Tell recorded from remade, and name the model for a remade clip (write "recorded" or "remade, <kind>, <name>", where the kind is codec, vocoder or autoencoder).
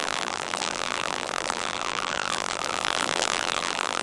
remade, vocoder, BigVGAN v2